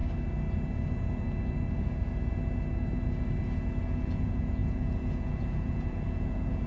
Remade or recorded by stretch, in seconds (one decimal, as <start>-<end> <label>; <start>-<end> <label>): 0.0-3.8 recorded; 3.8-6.7 remade